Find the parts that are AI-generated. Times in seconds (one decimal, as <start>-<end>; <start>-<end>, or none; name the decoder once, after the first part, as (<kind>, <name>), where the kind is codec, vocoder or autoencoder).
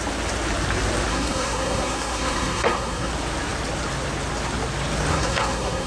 1.1-3.1 (codec, SNAC); 5.1-5.9